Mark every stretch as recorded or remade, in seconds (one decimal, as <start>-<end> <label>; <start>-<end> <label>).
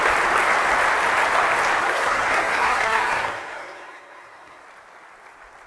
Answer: 0.0-1.8 recorded; 1.8-4.6 remade; 4.6-5.7 recorded